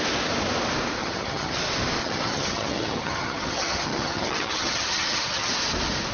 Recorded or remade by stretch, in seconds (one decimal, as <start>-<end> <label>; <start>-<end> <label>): 0.0-1.0 recorded; 1.0-1.6 remade; 1.6-2.0 recorded; 2.0-5.5 remade; 5.5-6.1 recorded